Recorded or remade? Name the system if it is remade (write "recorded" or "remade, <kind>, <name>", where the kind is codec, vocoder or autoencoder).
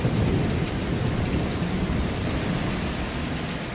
recorded